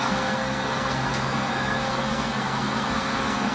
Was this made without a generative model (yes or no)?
no